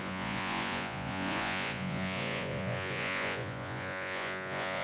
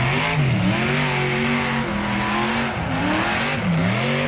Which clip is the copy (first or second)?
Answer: first